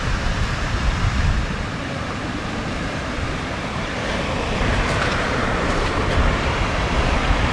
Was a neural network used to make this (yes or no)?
yes